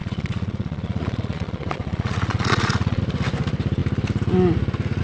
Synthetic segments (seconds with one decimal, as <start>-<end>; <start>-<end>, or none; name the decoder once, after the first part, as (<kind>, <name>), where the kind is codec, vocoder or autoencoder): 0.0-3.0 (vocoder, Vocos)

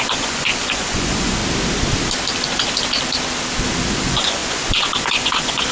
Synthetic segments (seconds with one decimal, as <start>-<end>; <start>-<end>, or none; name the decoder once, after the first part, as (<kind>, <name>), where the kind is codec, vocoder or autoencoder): 0.0-1.4 (vocoder, Vocos); 4.0-5.7

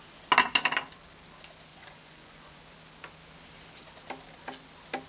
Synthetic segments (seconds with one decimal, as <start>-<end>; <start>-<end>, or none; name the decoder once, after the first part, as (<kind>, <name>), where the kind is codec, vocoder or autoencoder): 1.7-2.6 (vocoder, Vocos)

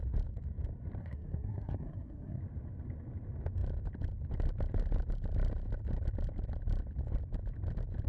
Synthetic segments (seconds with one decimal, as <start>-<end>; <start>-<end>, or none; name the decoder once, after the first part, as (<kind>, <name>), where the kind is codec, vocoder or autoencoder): 1.0-2.4 (codec, SNAC)

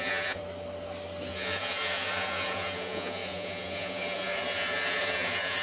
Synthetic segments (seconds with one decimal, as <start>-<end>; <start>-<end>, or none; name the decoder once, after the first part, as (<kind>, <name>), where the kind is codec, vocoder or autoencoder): 0.0-0.4 (vocoder, Vocos); 1.3-5.6